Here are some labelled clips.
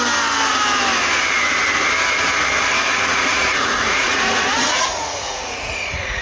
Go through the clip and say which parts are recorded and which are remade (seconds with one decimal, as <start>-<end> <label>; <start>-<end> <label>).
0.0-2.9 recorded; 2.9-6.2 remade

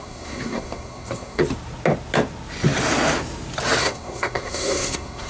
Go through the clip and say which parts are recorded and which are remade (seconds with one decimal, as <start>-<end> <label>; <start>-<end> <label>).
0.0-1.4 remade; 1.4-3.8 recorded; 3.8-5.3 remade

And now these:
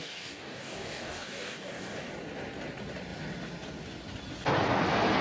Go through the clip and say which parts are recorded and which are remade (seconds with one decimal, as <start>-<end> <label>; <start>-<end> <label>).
0.0-2.1 remade; 2.1-5.2 recorded

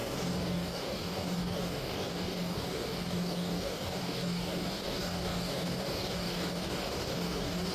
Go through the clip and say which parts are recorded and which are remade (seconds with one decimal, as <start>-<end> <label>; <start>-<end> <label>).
0.0-7.7 remade